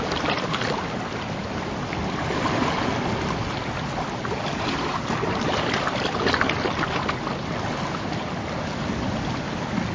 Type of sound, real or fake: real